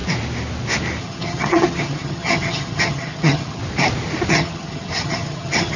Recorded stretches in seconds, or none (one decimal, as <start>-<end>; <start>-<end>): 0.0-1.0; 3.6-4.3